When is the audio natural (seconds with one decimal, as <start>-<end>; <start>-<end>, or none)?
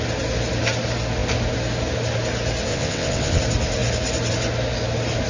0.0-2.7; 3.4-5.3